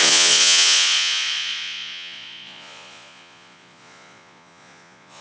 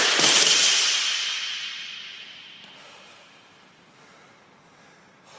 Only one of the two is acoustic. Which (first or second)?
second